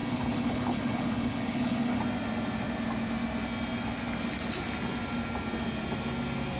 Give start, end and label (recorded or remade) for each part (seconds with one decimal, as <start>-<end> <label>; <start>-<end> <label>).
0.0-2.0 remade; 2.0-6.6 recorded